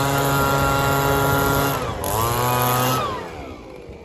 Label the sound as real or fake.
real